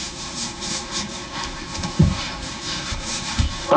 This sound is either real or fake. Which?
fake